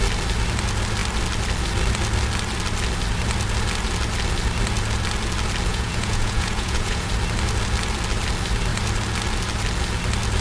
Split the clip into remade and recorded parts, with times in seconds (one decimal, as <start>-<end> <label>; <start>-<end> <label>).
0.0-5.7 recorded; 5.7-7.1 remade; 7.1-10.4 recorded